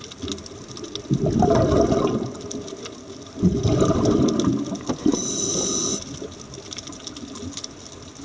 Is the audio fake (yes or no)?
no